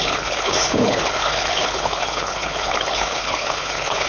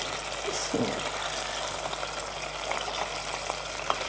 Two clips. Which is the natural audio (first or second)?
second